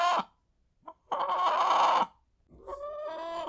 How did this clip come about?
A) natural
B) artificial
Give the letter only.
A